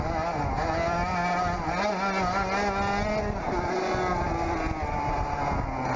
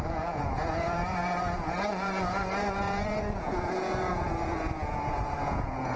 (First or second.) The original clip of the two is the first